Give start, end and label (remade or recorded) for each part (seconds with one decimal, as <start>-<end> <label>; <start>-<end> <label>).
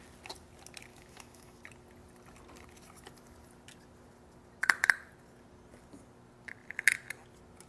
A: 0.0-0.9 recorded; 0.9-1.6 remade; 1.6-7.7 recorded